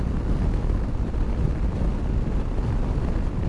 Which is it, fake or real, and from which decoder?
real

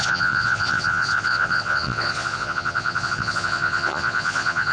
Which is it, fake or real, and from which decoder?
fake, vocoder, Vocos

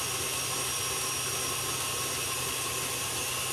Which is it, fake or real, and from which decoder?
real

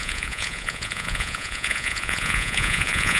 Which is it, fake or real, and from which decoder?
fake, vocoder, Vocos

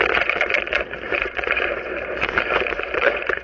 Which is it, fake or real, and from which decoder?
fake, vocoder, Vocos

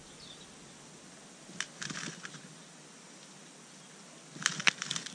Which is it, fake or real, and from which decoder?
real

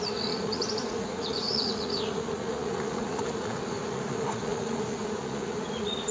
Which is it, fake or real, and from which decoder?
fake, vocoder, Vocos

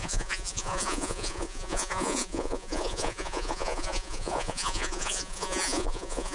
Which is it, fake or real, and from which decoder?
fake, vocoder, Vocos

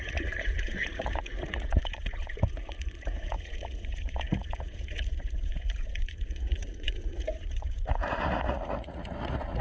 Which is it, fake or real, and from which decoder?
fake, vocoder, Vocos